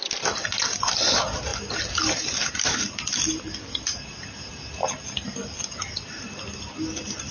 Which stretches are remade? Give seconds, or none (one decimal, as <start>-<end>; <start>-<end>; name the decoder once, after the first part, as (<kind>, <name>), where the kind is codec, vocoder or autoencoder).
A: none